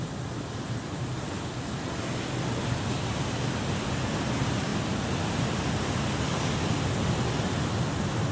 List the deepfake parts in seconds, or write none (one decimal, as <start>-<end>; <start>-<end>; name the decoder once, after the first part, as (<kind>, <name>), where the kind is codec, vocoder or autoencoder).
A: none